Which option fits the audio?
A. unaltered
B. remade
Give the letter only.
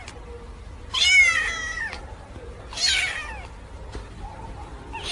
A